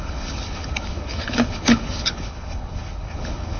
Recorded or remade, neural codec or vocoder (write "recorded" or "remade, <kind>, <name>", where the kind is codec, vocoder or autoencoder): remade, codec, HILCodec